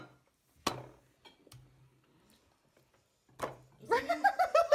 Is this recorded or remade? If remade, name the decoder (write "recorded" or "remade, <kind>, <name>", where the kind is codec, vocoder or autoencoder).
recorded